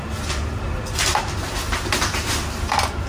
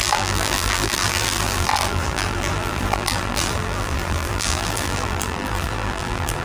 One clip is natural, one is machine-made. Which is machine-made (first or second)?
second